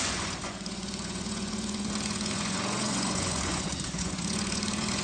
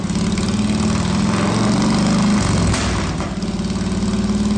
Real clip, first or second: second